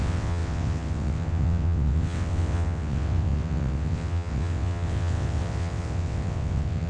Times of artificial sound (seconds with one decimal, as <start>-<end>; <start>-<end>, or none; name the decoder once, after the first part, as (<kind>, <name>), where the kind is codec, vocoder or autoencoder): 0.0-6.9 (vocoder, WaveNeXt)